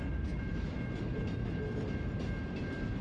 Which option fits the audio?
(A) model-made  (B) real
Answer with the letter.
B